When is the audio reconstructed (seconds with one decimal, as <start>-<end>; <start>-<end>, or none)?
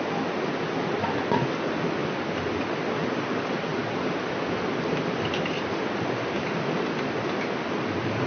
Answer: none